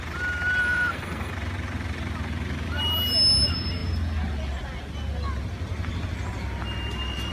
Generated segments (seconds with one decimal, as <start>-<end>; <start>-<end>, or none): 0.6-1.3